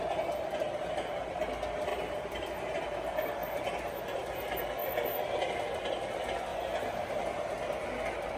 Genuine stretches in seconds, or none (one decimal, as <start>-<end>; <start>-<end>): 0.0-1.9; 2.5-6.5; 7.2-8.4